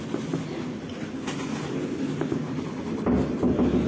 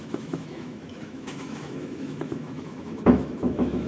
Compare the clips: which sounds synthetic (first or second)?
second